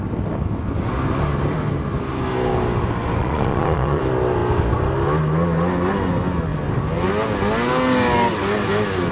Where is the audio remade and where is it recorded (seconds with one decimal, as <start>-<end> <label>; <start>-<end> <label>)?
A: 0.0-3.2 recorded; 3.2-4.0 remade; 4.0-9.1 recorded